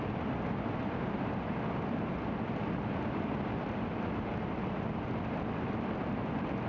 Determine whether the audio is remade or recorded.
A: remade